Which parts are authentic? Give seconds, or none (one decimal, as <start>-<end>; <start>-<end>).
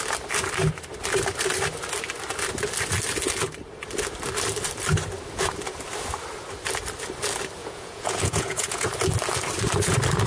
0.0-7.6; 8.9-10.3